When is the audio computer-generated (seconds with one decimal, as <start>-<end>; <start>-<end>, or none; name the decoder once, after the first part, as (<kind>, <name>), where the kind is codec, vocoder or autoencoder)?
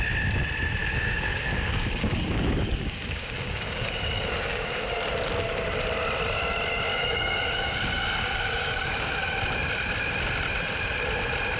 0.8-5.0 (codec, DAC); 6.9-9.4